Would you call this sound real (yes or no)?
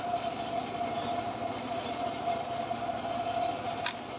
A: yes